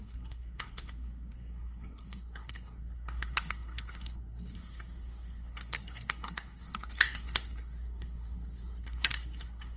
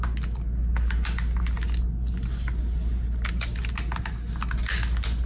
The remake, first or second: first